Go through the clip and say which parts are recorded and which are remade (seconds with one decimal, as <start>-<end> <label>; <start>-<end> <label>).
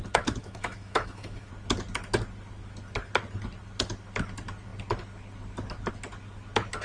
0.0-0.4 recorded; 0.4-1.5 remade; 1.5-6.8 recorded